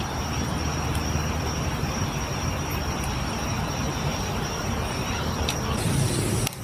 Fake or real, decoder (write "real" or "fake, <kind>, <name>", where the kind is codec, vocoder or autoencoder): fake, vocoder, BigVGAN v2